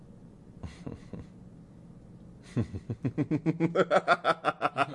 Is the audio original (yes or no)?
yes